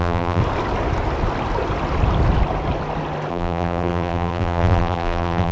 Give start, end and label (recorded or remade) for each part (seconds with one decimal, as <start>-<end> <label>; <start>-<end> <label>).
0.0-0.4 remade; 0.4-3.3 recorded; 3.3-5.5 remade